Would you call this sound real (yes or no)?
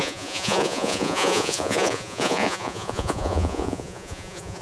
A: no